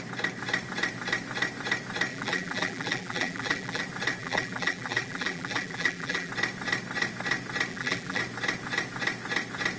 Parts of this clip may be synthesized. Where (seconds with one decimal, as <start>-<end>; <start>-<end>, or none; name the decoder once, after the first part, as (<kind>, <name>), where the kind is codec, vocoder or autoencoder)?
2.1-3.8 (vocoder, BigVGAN v2); 4.2-6.3; 7.7-8.2